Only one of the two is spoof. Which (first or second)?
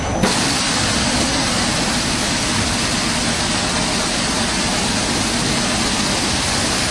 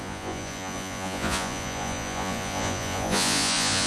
second